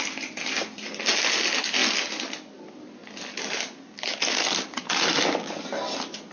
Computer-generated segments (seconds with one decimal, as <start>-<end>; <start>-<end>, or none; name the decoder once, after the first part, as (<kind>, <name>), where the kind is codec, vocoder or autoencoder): none